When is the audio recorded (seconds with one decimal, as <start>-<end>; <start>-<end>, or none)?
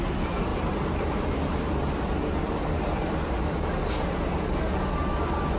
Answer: 0.0-5.6